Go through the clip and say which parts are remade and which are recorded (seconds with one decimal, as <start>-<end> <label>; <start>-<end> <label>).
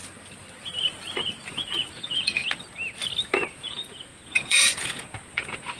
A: 0.0-1.5 recorded; 1.5-2.4 remade; 2.4-3.5 recorded; 3.5-5.8 remade